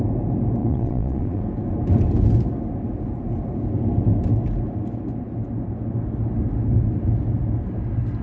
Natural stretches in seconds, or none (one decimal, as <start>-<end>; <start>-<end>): 0.0-0.6; 1.4-8.2

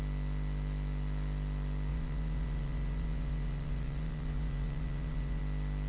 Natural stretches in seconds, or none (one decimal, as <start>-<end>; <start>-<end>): 0.0-1.9; 5.4-5.9

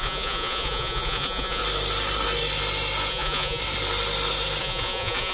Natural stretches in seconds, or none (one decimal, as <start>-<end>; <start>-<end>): 1.6-3.1; 3.6-4.6